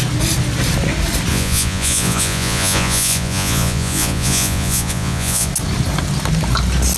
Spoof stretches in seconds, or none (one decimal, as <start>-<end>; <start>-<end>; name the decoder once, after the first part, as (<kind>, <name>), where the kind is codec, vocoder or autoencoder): 1.3-5.5 (vocoder, Vocos)